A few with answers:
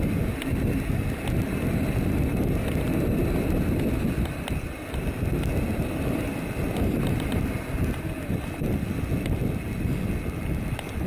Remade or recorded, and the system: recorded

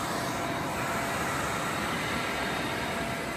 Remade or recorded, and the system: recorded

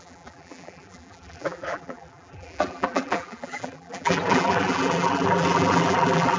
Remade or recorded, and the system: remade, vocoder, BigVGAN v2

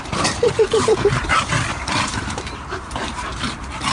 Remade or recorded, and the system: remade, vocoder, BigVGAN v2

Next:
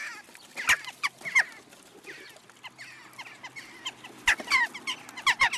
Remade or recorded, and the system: recorded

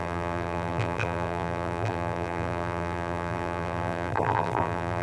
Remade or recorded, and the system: remade, vocoder, BigVGAN v2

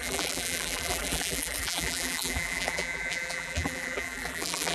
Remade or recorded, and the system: remade, vocoder, BigVGAN v2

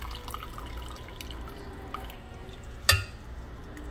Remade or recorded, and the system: recorded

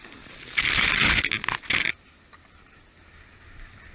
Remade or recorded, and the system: recorded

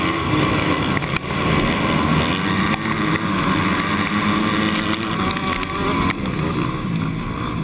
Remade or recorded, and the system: recorded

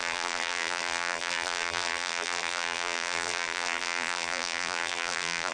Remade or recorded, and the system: remade, vocoder, BigVGAN v2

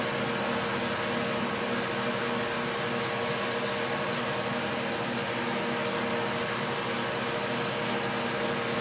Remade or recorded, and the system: recorded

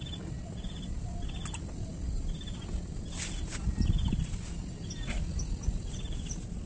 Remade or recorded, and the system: recorded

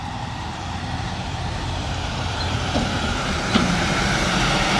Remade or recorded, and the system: remade, vocoder, BigVGAN v2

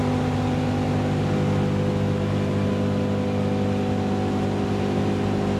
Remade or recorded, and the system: recorded